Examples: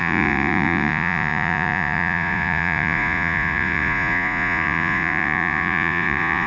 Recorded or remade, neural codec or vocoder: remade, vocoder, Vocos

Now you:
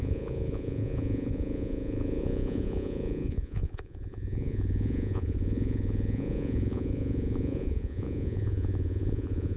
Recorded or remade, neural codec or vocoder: remade, vocoder, Vocos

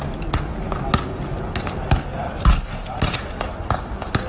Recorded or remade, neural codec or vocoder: recorded